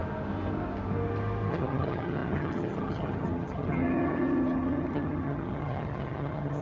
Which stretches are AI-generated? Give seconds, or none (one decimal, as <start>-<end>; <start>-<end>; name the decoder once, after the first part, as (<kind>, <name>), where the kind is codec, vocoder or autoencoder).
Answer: 1.5-6.6 (vocoder, HiFi-GAN)